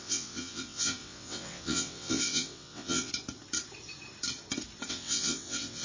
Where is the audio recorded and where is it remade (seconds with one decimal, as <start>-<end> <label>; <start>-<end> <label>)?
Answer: 0.0-3.1 remade; 3.1-4.9 recorded; 4.9-5.8 remade